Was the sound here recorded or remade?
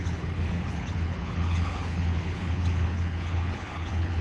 remade